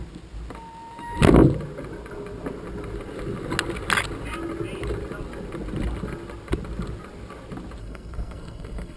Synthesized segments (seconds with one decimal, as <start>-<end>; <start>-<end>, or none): 7.8-9.0